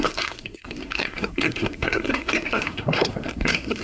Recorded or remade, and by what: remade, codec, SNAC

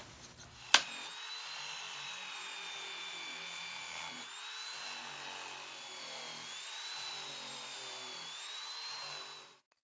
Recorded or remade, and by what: recorded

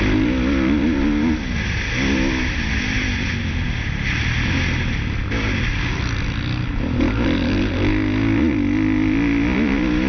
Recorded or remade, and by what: recorded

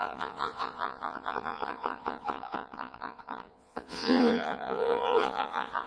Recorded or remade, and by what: remade, vocoder, Vocos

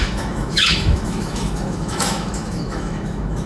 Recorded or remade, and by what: remade, autoencoder, DAC-VAE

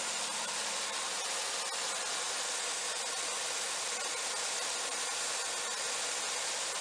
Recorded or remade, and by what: recorded